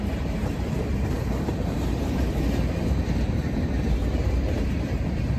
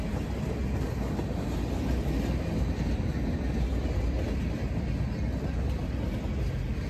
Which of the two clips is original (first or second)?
second